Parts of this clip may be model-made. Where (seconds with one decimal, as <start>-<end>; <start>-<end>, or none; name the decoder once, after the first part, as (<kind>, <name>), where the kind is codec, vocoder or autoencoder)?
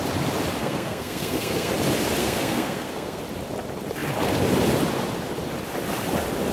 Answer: 0.6-1.7 (codec, SNAC); 2.2-3.2